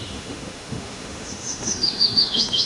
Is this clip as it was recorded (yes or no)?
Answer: no